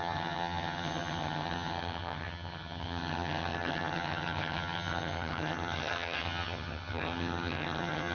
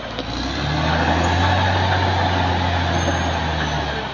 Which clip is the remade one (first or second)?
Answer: first